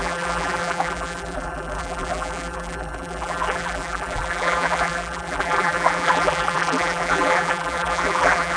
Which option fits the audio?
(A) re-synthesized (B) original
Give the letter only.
A